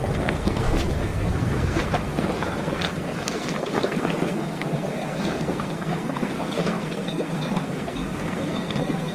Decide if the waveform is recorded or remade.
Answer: remade